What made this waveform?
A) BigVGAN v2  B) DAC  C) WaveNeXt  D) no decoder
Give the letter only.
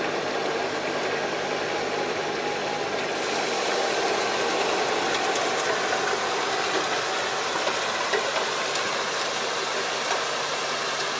D